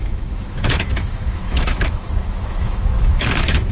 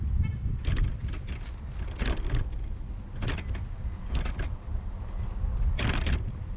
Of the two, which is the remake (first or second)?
first